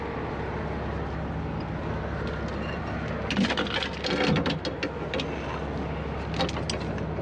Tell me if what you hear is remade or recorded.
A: recorded